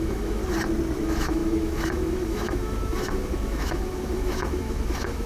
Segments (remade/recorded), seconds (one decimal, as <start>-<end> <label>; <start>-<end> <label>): 0.0-0.4 remade; 0.4-1.0 recorded; 1.0-5.3 remade